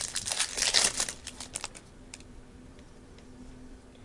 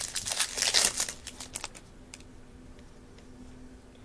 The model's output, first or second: first